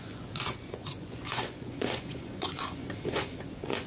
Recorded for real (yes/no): no